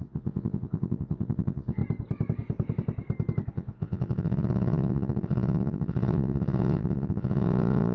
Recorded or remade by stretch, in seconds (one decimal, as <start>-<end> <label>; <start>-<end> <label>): 0.0-1.8 remade; 1.8-3.5 recorded; 3.5-7.9 remade